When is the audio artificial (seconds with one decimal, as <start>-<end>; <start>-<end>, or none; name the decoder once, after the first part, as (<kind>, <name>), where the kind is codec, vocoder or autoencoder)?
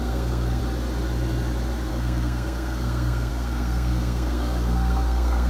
0.0-0.6 (codec, SNAC); 1.9-5.5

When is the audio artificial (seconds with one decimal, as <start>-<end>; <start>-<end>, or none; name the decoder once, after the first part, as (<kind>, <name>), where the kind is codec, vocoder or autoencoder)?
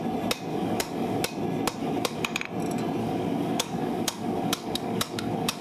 0.5-1.2 (codec, DAC); 1.8-2.4; 3.0-5.6